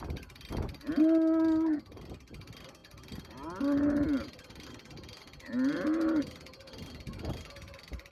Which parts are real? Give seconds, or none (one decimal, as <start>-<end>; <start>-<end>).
0.0-8.1